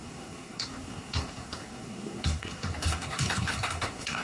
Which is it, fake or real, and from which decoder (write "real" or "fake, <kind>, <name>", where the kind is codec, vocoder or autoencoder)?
fake, codec, SNAC